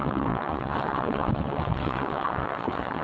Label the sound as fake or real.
fake